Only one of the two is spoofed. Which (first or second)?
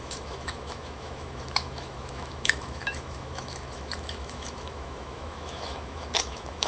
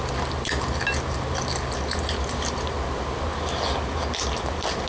first